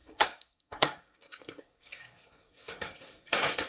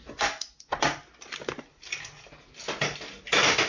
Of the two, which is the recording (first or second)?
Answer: second